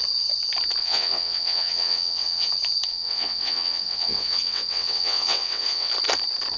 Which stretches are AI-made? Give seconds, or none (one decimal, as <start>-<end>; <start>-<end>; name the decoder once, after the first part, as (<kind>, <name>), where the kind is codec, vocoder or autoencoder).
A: 0.8-2.5 (vocoder, WaveNeXt); 2.9-5.9